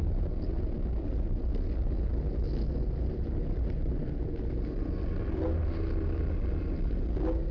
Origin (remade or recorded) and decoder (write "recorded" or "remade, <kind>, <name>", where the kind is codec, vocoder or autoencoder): recorded